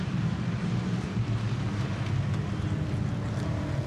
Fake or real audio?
real